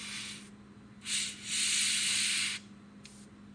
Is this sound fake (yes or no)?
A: no